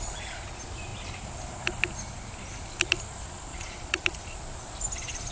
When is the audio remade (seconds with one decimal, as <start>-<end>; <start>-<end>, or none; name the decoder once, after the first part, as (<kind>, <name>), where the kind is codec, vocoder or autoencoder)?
3.5-4.2 (vocoder, Vocos)